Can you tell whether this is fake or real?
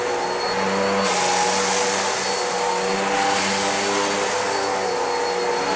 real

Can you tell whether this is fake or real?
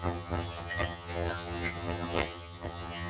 fake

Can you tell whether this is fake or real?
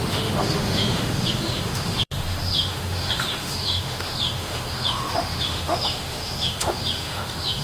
fake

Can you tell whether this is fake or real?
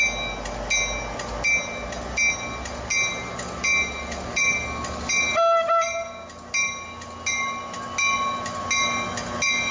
real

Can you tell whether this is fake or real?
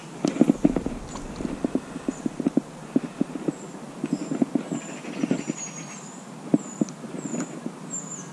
real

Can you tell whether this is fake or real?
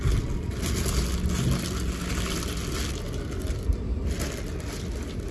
real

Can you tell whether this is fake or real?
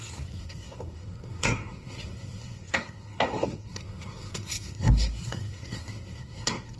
fake